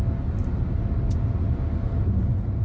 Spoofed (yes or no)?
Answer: no